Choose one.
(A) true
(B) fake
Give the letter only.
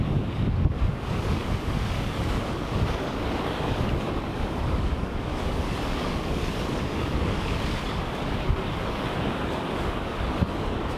B